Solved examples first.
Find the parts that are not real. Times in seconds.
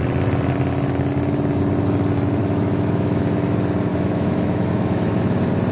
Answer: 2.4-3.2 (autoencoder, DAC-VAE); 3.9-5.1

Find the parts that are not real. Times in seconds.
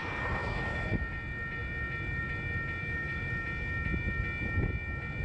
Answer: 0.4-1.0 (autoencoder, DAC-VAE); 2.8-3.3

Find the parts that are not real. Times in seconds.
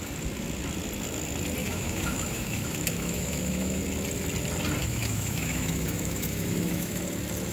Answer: 1.6-3.8 (autoencoder, DAC-VAE); 4.8-7.0